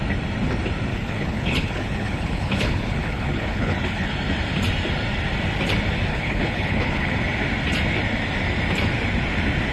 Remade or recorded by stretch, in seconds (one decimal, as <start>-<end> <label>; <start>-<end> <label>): 0.0-0.9 recorded; 0.9-4.1 remade; 4.1-6.1 recorded; 6.1-7.2 remade; 7.2-9.7 recorded